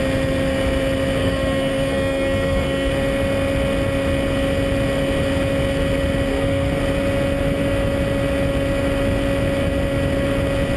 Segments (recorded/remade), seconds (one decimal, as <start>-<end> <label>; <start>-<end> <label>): 0.0-1.2 recorded; 1.2-2.9 remade; 2.9-6.3 recorded; 6.3-6.8 remade; 6.8-10.8 recorded